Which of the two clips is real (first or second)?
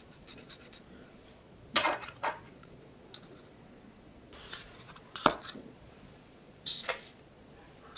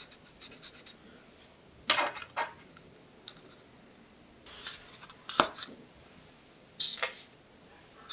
second